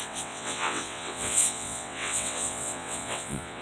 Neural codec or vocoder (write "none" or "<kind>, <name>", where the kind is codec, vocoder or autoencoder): vocoder, WaveNeXt